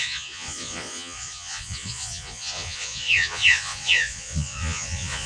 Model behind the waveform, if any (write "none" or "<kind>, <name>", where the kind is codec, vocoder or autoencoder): vocoder, Vocos